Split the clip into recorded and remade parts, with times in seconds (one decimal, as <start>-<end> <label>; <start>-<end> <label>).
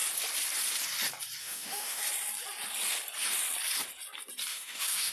0.0-1.4 recorded; 1.4-2.0 remade; 2.0-4.5 recorded; 4.5-5.1 remade